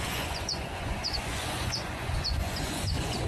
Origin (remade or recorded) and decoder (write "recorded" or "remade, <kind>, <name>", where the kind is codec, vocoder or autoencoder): remade, vocoder, Vocos